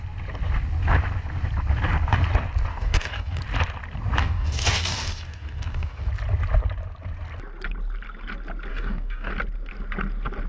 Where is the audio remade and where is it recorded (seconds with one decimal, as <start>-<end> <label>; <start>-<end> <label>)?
0.0-2.7 recorded; 2.7-3.4 remade; 3.4-4.2 recorded; 4.2-6.1 remade; 6.1-8.7 recorded; 8.7-9.3 remade; 9.3-10.5 recorded